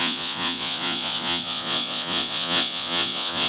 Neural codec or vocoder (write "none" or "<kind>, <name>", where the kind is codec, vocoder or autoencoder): vocoder, Vocos